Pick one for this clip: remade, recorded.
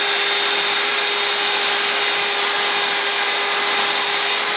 recorded